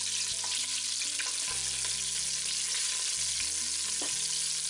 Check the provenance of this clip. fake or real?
real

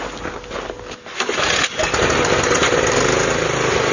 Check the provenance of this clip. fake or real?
real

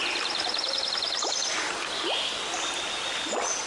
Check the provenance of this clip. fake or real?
real